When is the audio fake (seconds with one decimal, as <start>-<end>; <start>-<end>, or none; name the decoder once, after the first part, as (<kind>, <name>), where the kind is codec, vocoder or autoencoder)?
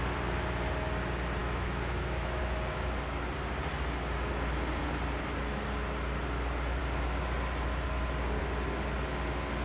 1.4-2.4 (autoencoder, DAC-VAE)